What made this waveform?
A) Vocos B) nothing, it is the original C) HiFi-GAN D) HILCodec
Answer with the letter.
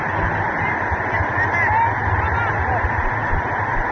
B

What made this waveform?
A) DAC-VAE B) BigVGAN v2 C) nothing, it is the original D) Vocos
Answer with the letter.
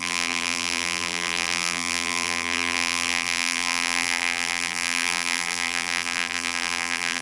B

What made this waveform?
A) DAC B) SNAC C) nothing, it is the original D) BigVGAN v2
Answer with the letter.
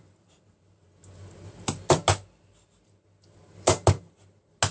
C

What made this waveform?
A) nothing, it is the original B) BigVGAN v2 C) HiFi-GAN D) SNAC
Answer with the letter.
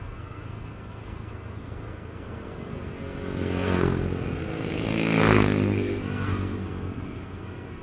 D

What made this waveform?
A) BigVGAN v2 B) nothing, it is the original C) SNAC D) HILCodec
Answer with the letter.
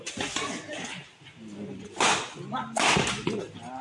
B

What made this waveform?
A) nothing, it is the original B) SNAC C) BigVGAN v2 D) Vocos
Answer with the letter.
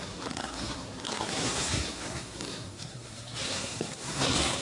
B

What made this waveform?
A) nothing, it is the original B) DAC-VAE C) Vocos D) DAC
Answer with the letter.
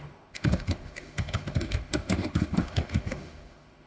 B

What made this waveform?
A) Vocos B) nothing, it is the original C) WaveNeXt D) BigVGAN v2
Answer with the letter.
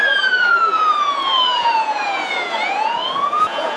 A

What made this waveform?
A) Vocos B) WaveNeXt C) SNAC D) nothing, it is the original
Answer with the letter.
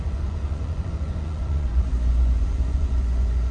A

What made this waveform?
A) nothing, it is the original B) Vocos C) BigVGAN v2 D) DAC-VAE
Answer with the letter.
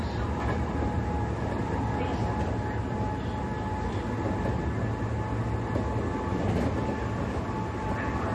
A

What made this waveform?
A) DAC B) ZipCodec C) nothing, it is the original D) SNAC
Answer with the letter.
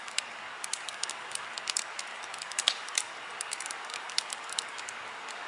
A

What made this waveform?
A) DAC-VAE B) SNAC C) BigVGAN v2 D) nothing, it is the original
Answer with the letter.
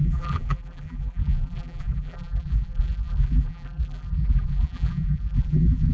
C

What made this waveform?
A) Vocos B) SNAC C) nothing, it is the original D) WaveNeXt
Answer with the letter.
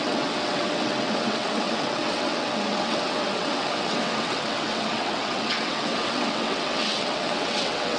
D